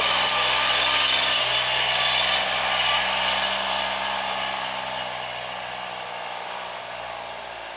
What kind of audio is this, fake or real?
real